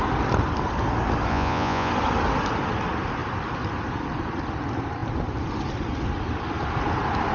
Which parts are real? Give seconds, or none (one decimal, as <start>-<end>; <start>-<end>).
0.0-1.3; 1.9-7.3